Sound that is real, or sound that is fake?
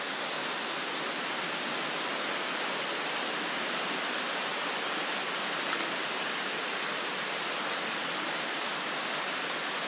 real